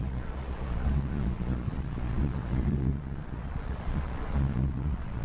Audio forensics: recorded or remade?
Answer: remade